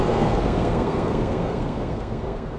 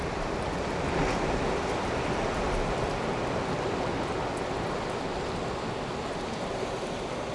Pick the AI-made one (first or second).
first